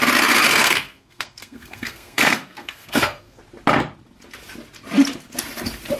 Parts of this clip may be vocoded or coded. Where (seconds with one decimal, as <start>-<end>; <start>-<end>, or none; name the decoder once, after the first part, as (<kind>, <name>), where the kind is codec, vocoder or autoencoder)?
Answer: 0.6-3.4 (codec, SNAC)